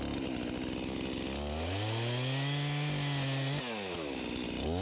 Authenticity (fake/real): real